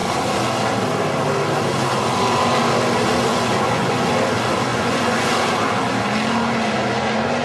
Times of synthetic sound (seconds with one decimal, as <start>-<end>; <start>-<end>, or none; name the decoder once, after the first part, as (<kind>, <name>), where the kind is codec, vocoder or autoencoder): 3.3-4.1 (vocoder, Vocos); 4.7-5.3